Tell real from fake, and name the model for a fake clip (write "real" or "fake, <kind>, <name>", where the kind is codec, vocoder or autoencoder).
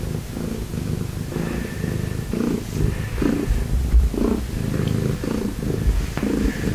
real